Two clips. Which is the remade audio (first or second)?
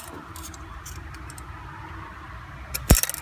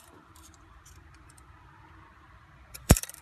second